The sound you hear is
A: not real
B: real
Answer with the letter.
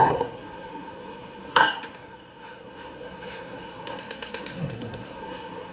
A